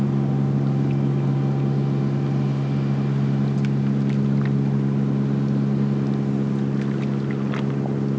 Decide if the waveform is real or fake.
real